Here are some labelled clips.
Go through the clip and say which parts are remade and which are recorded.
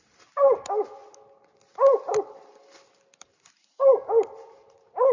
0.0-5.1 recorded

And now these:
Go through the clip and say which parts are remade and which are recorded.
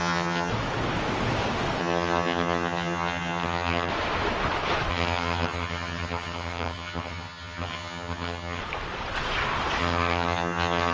0.0-0.5 remade; 0.5-1.8 recorded; 1.8-3.9 remade; 3.9-4.9 recorded; 4.9-8.6 remade; 8.6-9.8 recorded; 9.8-10.9 remade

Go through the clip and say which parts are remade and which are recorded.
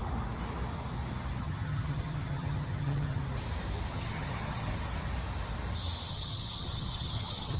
0.0-1.4 recorded; 1.4-3.2 remade; 3.2-3.9 recorded; 3.9-4.7 remade; 4.7-6.1 recorded; 6.1-7.6 remade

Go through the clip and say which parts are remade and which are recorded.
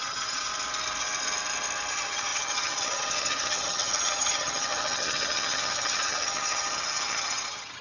0.0-0.5 remade; 0.5-1.9 recorded; 1.9-7.8 remade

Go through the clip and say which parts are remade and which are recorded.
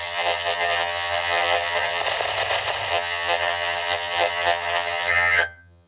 0.0-2.0 remade; 2.0-2.9 recorded; 2.9-5.9 remade